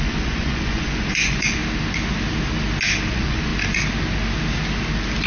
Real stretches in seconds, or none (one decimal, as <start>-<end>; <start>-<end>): 1.6-3.1; 3.5-5.3